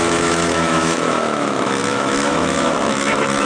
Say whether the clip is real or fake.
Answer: fake